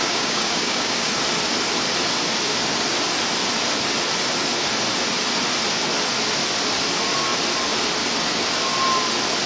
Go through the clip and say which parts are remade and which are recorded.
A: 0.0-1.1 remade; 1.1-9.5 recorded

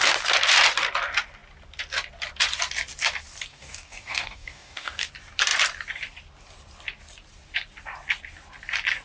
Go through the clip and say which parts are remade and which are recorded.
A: 0.0-3.5 recorded; 3.5-5.1 remade; 5.1-9.0 recorded

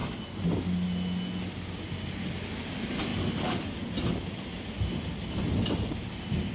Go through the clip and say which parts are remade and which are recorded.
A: 0.0-6.5 recorded